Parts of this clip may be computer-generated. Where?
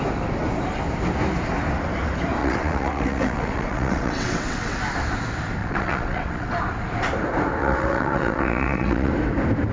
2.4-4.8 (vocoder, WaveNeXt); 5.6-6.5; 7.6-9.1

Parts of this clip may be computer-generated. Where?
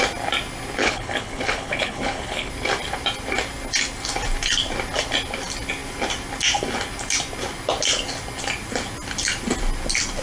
0.8-2.5 (codec, HILCodec)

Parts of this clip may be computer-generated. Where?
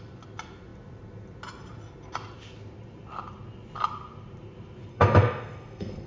4.9-6.1 (codec, SNAC)